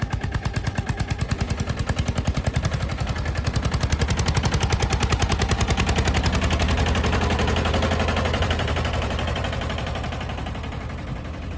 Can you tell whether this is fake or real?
real